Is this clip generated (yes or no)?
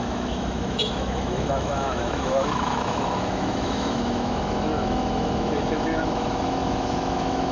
yes